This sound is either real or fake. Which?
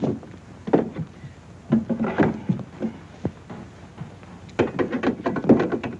real